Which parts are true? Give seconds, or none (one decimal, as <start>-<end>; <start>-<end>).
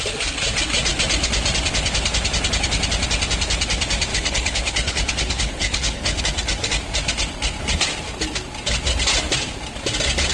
0.0-4.1; 6.2-10.3